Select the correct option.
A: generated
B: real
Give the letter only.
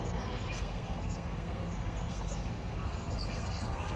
A